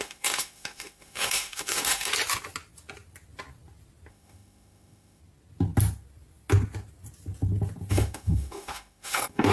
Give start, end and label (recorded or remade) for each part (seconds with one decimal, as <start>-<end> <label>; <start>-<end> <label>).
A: 0.0-2.1 remade; 2.1-4.1 recorded; 4.1-5.2 remade; 5.2-7.9 recorded; 7.9-9.5 remade

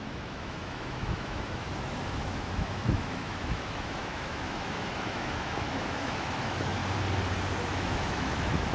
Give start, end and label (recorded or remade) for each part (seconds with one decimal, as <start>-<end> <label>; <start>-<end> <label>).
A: 0.0-6.8 remade; 6.8-7.7 recorded; 7.7-8.7 remade

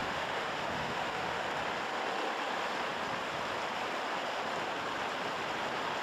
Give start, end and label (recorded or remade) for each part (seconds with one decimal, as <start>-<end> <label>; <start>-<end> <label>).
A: 0.0-1.5 remade; 1.5-6.0 recorded

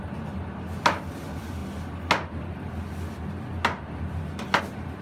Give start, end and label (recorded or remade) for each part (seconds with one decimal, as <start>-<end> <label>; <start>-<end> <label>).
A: 0.0-5.0 recorded